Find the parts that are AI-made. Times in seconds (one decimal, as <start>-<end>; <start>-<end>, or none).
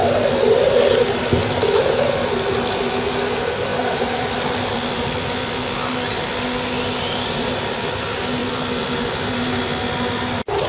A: 3.7-5.5; 8.4-9.3